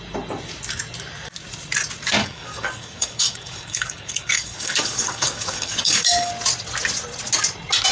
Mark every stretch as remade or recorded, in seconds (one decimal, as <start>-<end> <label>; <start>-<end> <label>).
0.0-2.2 recorded; 2.2-6.3 remade; 6.3-7.9 recorded